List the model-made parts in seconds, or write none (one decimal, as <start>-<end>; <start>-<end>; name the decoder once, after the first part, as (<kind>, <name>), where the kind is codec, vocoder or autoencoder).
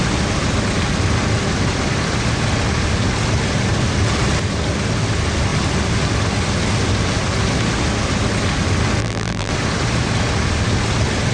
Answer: 9.0-9.5 (vocoder, BigVGAN v2)